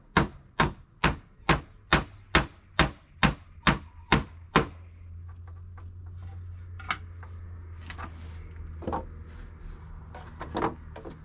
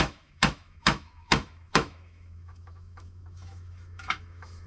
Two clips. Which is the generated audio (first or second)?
second